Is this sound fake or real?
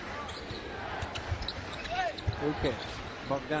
real